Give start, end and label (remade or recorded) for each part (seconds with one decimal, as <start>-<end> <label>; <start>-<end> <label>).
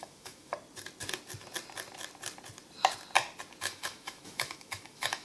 0.0-0.5 remade; 0.5-3.6 recorded; 3.6-5.2 remade